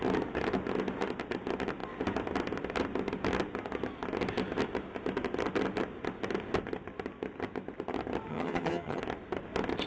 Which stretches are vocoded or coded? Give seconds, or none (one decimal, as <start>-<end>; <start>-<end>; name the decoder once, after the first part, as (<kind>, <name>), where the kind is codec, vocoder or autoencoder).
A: 8.3-9.0 (vocoder, HiFi-GAN)